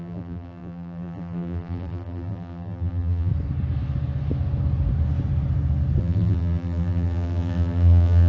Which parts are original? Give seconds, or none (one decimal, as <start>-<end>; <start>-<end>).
3.3-6.0